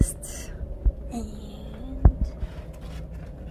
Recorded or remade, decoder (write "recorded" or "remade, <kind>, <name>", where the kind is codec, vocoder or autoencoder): remade, vocoder, BigVGAN v2